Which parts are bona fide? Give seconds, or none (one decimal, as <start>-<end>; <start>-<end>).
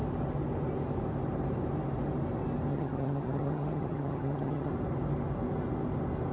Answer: 0.0-2.7; 4.7-6.3